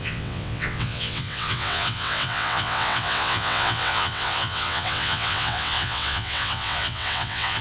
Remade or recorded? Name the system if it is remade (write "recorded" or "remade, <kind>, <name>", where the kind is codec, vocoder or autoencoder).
remade, vocoder, WaveNeXt